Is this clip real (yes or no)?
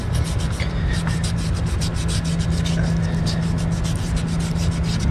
yes